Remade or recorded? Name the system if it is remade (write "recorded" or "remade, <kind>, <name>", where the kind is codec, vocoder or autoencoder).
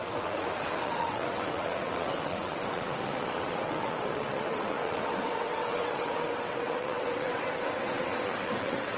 remade, vocoder, WaveNeXt